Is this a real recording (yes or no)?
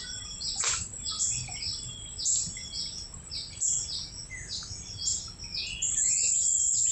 yes